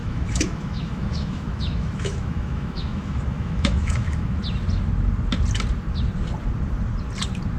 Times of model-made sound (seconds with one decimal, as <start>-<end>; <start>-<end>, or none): 0.0-4.4

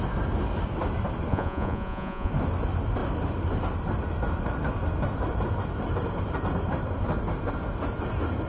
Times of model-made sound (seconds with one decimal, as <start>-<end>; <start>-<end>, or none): 1.3-2.3

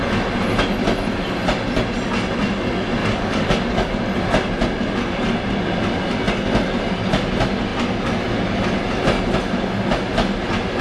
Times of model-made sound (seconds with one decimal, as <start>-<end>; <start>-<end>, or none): 3.0-3.9

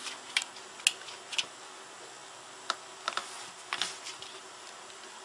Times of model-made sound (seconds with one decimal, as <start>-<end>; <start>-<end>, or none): none

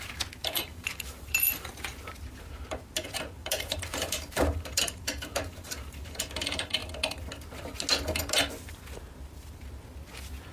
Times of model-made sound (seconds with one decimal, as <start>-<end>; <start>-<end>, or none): 0.4-1.7; 3.4-6.2

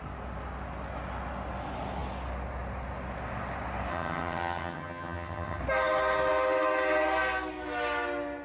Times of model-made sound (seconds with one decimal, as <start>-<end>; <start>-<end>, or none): 3.9-5.6

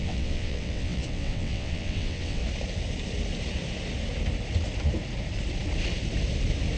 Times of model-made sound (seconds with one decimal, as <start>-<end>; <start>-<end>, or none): 0.0-2.4